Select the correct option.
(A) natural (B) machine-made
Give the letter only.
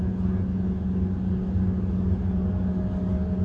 A